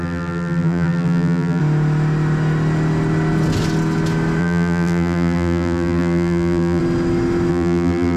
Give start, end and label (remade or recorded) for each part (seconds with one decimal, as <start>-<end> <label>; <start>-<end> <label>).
0.0-1.6 remade; 1.6-4.4 recorded; 4.4-6.8 remade; 6.8-7.5 recorded; 7.5-8.2 remade